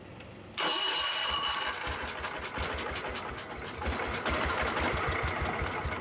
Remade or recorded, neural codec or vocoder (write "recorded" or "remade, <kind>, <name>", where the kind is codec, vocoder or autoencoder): recorded